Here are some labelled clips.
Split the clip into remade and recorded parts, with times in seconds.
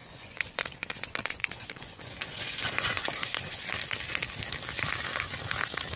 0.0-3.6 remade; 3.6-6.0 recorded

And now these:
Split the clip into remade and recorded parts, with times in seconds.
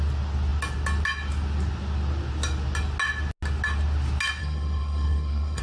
0.0-4.4 recorded; 4.4-5.6 remade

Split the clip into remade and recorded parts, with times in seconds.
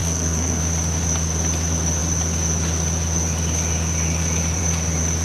0.0-0.6 remade; 0.6-5.2 recorded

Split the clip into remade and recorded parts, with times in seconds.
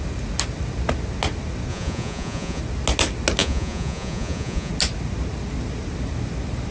0.0-1.7 recorded; 1.7-2.6 remade; 2.6-3.4 recorded; 3.4-4.7 remade; 4.7-6.7 recorded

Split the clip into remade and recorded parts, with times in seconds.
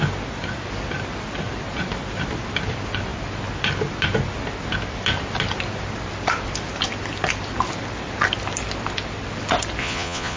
0.0-9.8 recorded; 9.8-10.4 remade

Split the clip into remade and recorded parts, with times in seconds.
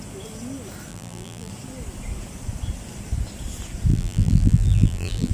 0.0-0.9 recorded; 0.9-1.5 remade; 1.5-3.9 recorded; 3.9-5.3 remade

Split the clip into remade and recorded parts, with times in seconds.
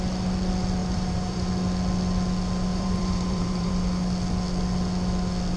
0.0-0.8 recorded; 0.8-1.5 remade; 1.5-2.7 recorded; 2.7-3.7 remade; 3.7-5.6 recorded